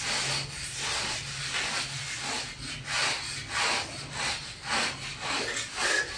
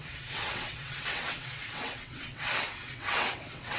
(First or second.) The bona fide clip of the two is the first